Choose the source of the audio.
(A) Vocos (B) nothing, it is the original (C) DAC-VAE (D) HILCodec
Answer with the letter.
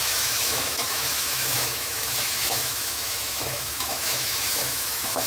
C